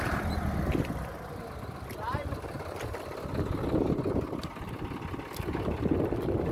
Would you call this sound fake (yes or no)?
no